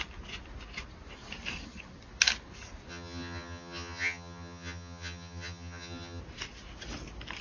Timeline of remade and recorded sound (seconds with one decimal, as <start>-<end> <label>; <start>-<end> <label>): 0.0-2.9 recorded; 2.9-6.2 remade; 6.2-7.4 recorded